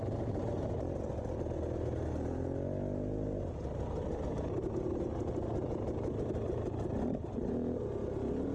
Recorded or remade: recorded